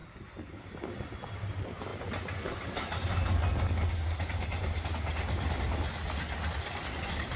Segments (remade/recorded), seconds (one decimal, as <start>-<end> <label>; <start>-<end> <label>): 0.0-1.9 recorded; 1.9-3.9 remade; 3.9-7.4 recorded